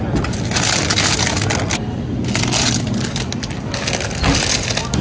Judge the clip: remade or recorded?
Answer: recorded